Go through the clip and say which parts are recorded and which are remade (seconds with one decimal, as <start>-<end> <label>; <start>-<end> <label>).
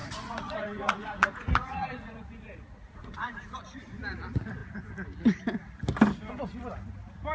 0.0-3.6 remade; 3.6-7.3 recorded